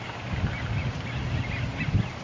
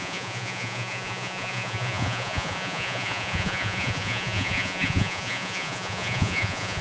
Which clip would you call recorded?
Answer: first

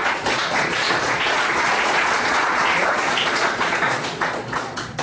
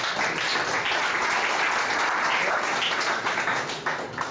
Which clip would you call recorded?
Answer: second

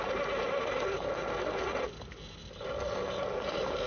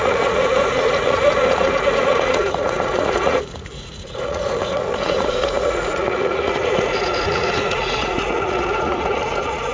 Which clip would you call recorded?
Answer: first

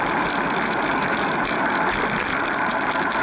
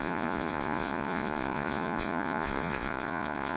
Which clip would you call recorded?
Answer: first